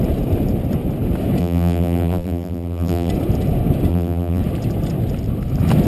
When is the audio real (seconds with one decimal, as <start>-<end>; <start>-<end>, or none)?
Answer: 0.0-1.4; 3.1-3.9; 4.4-5.9